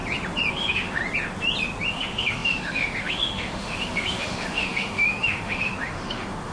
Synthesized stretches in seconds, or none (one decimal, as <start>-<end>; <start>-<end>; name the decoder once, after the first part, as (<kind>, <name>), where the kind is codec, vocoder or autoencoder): 0.5-1.0 (autoencoder, DAC-VAE); 1.9-6.5